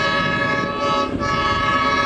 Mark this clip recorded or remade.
recorded